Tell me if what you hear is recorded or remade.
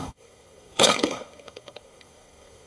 remade